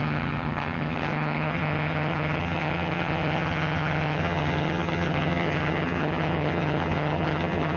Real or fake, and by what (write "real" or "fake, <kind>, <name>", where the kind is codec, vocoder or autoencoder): fake, vocoder, HiFi-GAN